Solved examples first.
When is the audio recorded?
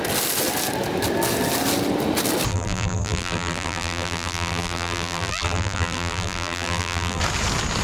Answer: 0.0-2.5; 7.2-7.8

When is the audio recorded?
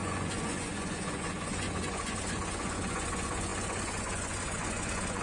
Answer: none